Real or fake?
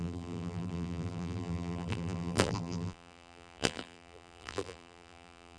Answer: fake